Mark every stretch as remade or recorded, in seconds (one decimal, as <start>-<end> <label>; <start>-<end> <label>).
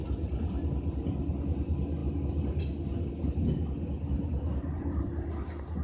0.0-1.3 remade; 1.3-4.3 recorded; 4.3-5.2 remade; 5.2-5.8 recorded